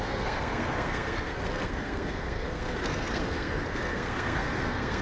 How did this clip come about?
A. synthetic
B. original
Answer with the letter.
A